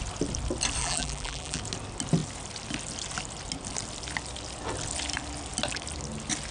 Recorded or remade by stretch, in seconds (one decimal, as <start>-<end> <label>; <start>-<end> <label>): 0.0-0.8 recorded; 0.8-1.6 remade; 1.6-6.5 recorded